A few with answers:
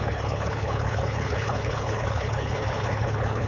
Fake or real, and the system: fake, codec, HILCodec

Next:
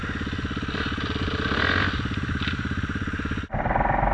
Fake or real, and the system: real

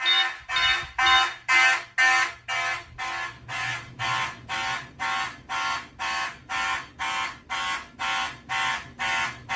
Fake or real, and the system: real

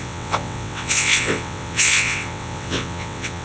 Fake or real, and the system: fake, vocoder, WaveNeXt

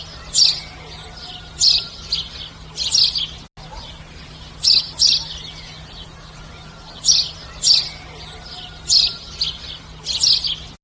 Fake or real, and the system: real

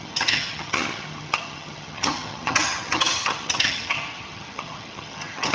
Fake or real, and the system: fake, vocoder, HiFi-GAN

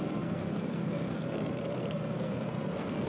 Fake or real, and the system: fake, codec, SNAC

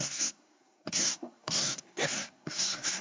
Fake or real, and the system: fake, codec, SNAC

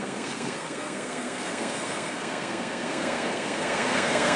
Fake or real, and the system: fake, codec, SNAC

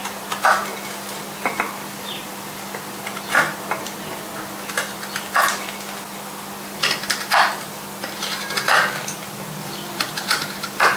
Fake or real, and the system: real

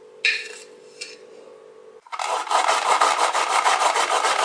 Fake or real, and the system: real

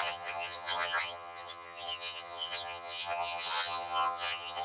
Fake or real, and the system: fake, vocoder, HiFi-GAN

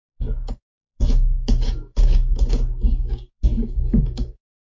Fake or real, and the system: fake, codec, DAC